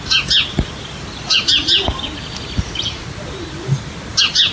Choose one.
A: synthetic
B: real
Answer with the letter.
B